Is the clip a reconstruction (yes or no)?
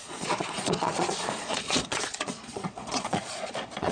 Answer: yes